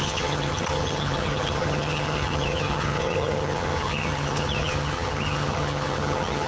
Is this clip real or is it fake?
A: fake